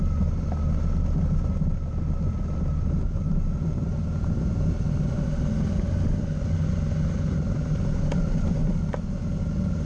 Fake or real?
real